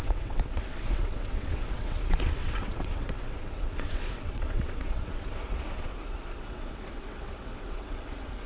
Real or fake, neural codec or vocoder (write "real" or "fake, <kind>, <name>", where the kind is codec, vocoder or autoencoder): fake, vocoder, WaveNeXt